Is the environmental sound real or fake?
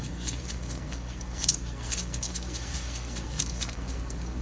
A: fake